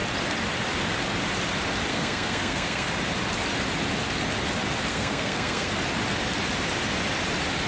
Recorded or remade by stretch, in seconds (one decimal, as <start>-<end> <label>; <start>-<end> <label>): 0.0-1.9 recorded; 1.9-2.9 remade; 2.9-4.9 recorded; 4.9-5.7 remade; 5.7-7.7 recorded